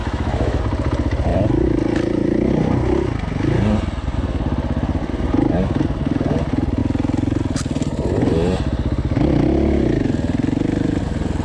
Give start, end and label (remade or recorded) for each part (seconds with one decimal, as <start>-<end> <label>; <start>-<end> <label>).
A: 0.0-0.6 remade; 0.6-11.4 recorded